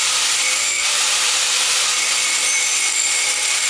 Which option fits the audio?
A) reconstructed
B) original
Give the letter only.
A